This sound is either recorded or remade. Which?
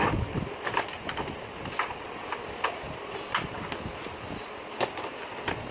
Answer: recorded